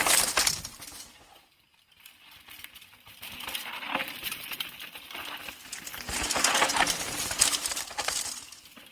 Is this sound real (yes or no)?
yes